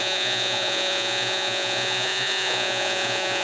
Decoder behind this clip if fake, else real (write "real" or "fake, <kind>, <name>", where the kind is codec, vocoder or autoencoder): fake, vocoder, Vocos